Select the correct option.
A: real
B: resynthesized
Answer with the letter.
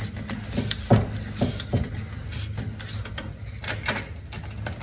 A